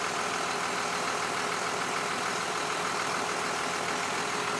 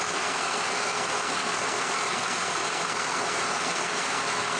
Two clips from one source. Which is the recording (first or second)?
first